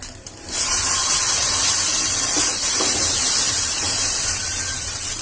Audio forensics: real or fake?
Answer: real